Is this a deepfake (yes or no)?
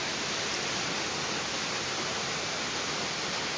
no